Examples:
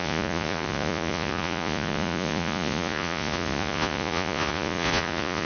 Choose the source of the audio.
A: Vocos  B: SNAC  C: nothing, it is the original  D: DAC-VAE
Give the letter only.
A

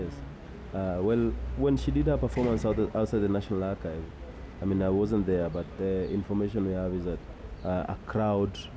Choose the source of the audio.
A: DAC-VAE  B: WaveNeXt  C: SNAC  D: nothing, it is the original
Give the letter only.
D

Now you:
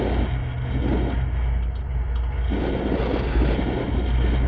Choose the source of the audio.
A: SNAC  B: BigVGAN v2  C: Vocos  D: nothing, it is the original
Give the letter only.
D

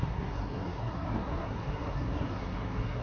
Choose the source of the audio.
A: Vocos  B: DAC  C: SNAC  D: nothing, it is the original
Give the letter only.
C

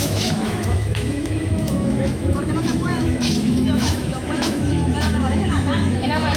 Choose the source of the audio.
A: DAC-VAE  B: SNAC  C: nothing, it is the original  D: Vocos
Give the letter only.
A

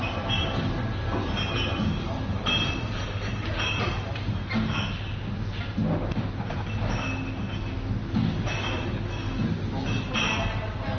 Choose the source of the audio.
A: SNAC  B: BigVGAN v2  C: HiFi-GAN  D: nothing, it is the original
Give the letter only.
D